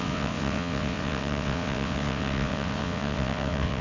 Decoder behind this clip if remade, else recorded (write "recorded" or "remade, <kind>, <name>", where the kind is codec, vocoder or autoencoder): remade, vocoder, WaveNeXt